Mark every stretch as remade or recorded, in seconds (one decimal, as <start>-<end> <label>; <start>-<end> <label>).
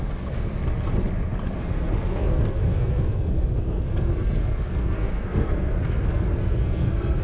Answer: 0.0-0.6 remade; 0.6-1.6 recorded; 1.6-7.2 remade